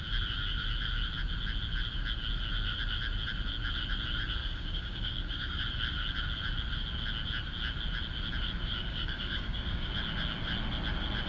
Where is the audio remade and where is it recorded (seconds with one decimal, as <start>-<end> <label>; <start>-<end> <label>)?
0.0-4.4 recorded; 4.4-5.6 remade; 5.6-8.8 recorded; 8.8-9.9 remade; 9.9-11.3 recorded